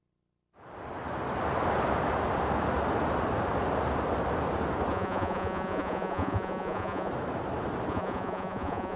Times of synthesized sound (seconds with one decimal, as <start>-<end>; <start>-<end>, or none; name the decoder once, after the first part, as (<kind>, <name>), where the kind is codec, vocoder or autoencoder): 4.9-7.1 (vocoder, Vocos); 7.9-9.0